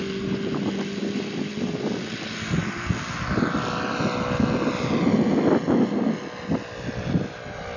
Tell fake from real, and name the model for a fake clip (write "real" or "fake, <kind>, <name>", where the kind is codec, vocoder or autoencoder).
real